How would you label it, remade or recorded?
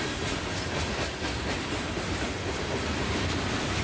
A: recorded